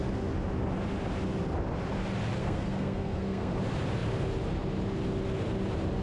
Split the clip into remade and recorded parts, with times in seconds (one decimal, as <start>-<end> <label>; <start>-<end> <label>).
0.0-2.4 recorded; 2.4-3.5 remade; 3.5-6.0 recorded